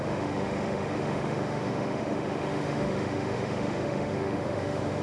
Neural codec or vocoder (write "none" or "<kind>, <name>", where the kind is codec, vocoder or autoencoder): autoencoder, DAC-VAE